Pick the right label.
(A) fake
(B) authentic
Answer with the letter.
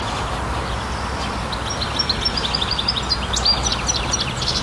B